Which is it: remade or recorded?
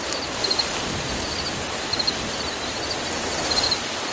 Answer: recorded